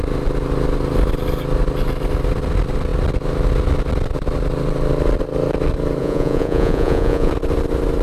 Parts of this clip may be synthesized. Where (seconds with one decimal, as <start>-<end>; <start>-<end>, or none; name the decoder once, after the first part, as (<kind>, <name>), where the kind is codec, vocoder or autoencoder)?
6.0-7.3 (vocoder, Vocos)

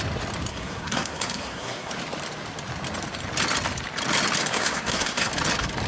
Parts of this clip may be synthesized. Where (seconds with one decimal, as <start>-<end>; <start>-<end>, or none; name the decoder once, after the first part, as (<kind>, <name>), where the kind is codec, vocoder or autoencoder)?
0.5-1.9 (codec, SNAC); 4.4-5.3

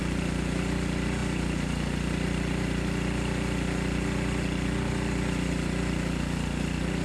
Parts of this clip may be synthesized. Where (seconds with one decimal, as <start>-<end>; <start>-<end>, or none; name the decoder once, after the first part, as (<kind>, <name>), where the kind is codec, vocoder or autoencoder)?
none